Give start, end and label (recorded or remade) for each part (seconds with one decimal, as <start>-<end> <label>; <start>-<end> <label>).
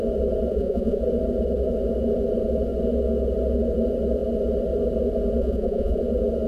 0.0-0.5 recorded; 0.5-1.0 remade; 1.0-5.4 recorded; 5.4-6.0 remade; 6.0-6.5 recorded